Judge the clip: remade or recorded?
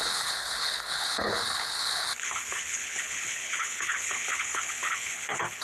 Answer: remade